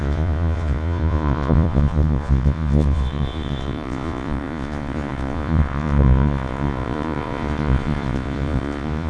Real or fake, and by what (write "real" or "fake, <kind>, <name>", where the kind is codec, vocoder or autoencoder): fake, vocoder, Vocos